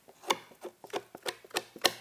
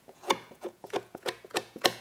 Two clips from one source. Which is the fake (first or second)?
second